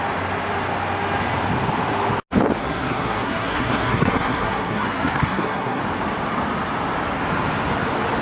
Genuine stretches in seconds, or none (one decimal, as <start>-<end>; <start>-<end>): 0.0-2.6; 5.8-8.2

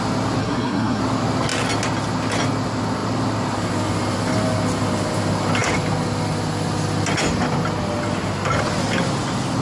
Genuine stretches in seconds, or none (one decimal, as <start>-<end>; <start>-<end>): 0.0-0.4; 1.0-9.6

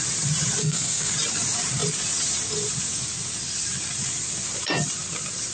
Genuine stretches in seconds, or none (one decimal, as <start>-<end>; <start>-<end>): 0.0-0.6; 1.1-5.5

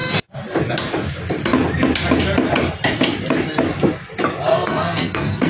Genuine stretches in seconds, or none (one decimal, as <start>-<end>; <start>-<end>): 0.0-4.5

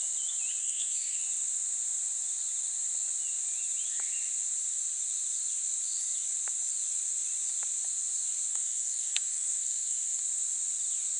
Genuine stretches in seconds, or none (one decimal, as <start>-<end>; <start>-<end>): 0.0-0.6; 1.2-8.5; 10.2-11.2

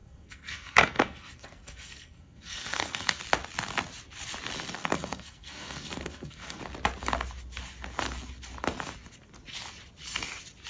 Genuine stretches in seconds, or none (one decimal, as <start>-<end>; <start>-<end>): 3.2-4.8; 6.6-10.7

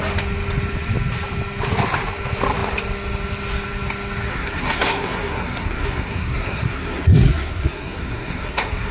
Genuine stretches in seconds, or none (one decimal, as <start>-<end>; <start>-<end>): 0.0-4.3